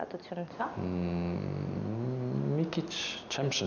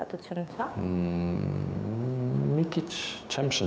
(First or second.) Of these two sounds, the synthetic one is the second